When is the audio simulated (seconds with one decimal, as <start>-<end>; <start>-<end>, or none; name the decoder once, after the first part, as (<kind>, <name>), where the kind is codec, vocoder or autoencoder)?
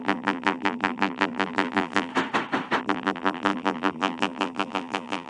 0.0-2.1 (vocoder, BigVGAN v2); 2.8-5.3